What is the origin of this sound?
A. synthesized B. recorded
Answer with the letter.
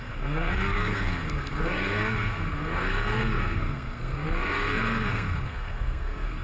A